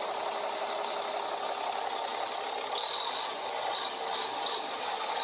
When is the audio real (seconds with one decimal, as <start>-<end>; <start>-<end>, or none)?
0.0-5.2